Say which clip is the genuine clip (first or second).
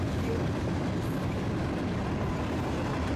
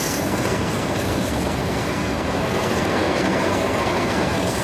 first